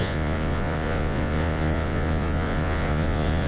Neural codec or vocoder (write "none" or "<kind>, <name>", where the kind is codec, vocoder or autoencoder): vocoder, Vocos